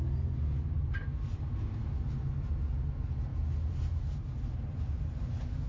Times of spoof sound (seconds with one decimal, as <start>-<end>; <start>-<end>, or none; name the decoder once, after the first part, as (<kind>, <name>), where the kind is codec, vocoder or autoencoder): none